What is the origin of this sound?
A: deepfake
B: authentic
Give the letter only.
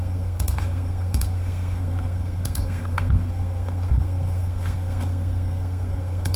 A